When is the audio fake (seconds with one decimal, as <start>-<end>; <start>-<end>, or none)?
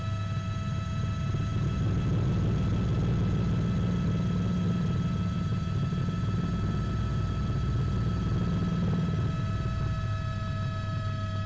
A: none